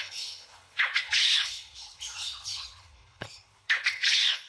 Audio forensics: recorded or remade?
remade